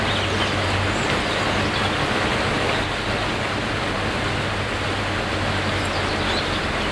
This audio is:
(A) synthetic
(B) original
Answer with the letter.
B